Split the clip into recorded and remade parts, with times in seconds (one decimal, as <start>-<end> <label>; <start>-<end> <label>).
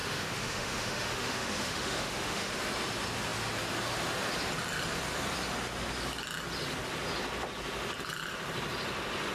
0.0-2.5 remade; 2.5-9.3 recorded